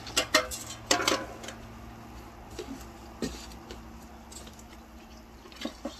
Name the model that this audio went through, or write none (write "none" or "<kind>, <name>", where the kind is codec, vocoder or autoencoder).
none